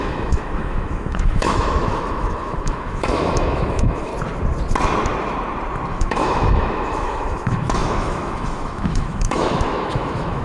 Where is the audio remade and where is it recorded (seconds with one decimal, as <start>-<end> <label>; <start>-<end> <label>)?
0.0-4.1 remade; 4.1-5.9 recorded; 5.9-10.4 remade